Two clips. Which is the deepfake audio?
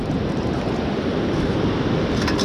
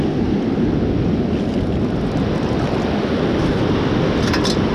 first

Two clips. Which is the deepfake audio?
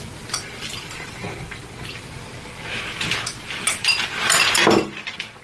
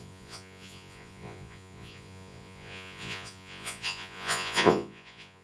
second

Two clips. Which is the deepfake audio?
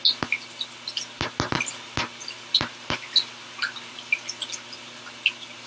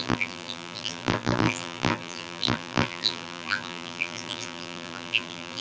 second